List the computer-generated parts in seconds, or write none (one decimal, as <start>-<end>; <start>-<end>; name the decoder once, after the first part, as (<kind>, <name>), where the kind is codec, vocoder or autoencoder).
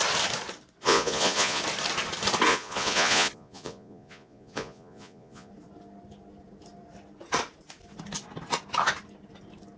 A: 0.8-1.6 (vocoder, Vocos); 2.5-5.5